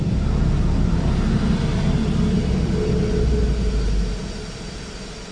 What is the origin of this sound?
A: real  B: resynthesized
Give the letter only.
A